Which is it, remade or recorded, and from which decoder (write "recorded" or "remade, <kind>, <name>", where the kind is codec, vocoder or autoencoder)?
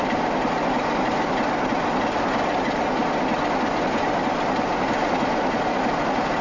recorded